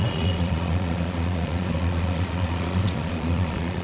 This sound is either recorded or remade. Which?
remade